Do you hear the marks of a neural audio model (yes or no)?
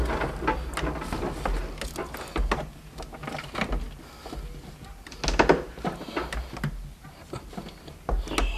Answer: no